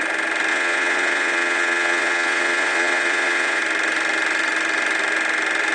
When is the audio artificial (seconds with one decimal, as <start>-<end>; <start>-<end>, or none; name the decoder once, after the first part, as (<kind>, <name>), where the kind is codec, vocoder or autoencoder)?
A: 0.5-3.6 (vocoder, Vocos)